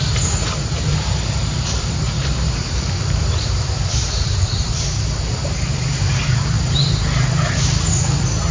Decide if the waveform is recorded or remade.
remade